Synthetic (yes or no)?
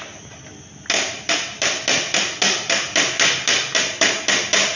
no